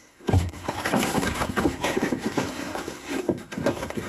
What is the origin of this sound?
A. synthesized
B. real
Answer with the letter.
A